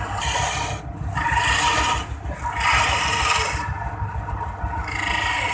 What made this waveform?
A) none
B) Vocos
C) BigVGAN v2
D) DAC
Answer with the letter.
A